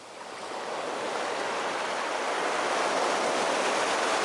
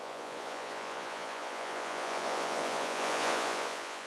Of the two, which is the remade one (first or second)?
second